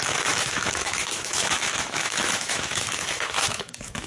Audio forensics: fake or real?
fake